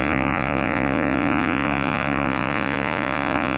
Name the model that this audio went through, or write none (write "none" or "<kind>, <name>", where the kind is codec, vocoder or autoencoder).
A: vocoder, Vocos